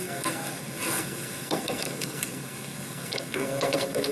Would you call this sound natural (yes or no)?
no